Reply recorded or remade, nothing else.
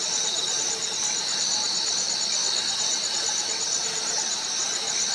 recorded